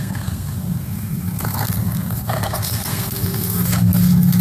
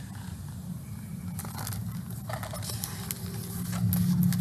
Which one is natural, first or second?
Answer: second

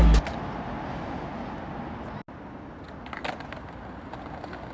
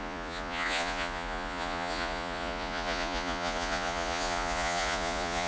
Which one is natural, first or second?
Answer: first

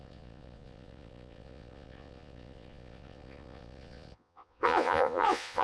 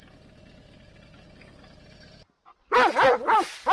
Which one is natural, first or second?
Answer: second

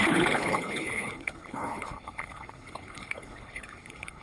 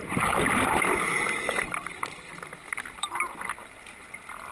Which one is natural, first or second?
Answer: second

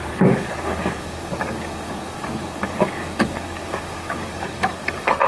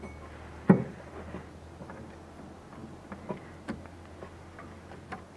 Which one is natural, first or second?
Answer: second